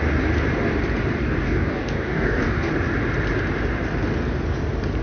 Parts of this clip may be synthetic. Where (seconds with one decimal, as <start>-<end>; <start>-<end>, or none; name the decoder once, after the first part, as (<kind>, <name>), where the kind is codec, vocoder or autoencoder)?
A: 1.2-2.7 (codec, DAC)